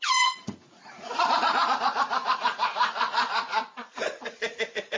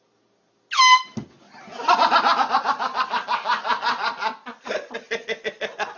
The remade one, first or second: first